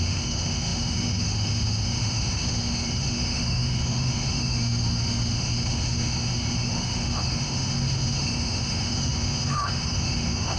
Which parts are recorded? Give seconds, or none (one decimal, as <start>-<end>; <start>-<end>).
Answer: none